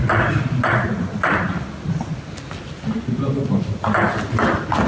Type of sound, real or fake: real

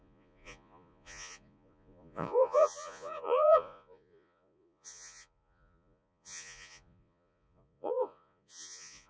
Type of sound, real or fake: fake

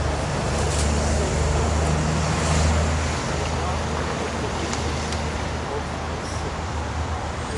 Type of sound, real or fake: real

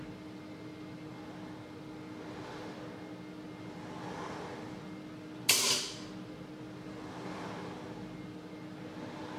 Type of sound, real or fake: real